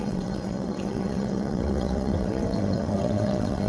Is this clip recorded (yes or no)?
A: no